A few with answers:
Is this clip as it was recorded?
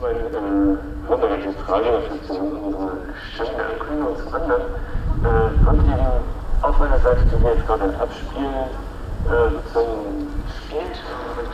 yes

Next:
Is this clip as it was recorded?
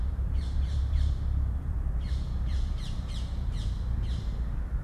no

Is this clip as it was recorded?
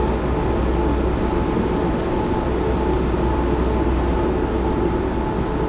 yes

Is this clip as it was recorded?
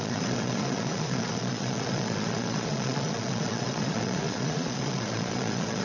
no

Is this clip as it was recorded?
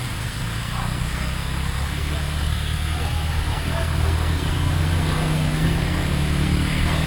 no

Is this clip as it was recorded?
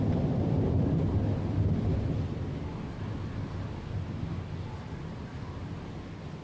yes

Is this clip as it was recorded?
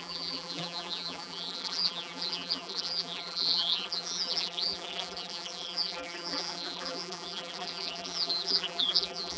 no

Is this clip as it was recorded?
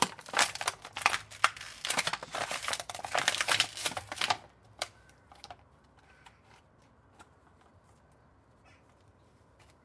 no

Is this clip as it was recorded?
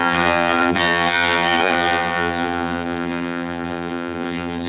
no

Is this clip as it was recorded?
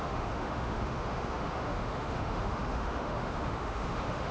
no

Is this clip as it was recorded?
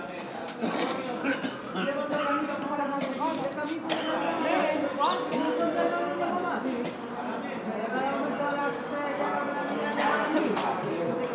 yes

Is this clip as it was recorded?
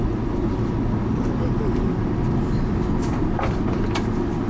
yes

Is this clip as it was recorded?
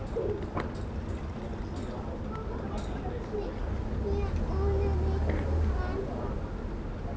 yes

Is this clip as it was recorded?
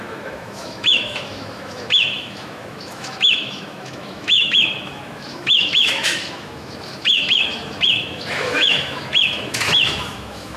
no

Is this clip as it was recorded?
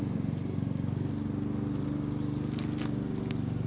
yes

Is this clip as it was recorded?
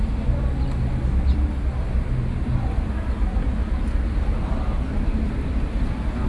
yes